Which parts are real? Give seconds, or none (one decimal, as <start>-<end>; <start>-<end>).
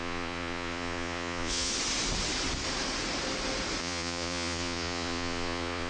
1.7-3.8